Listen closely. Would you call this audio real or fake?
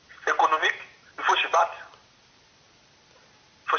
real